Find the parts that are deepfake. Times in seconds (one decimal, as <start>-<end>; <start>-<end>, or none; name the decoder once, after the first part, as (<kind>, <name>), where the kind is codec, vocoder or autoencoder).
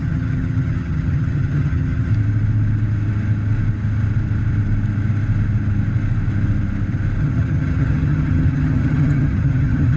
0.0-2.1 (vocoder, HiFi-GAN); 7.2-10.0